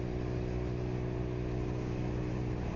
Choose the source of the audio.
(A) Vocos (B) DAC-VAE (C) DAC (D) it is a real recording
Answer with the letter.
D